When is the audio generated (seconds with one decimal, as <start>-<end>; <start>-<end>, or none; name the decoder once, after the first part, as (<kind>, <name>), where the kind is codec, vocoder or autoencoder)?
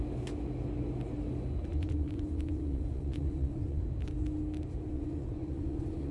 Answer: 1.7-3.8 (vocoder, Vocos); 4.9-6.1